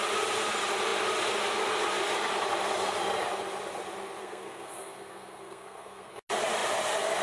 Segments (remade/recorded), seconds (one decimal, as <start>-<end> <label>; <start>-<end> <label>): 0.0-4.2 recorded; 4.2-6.1 remade; 6.1-7.2 recorded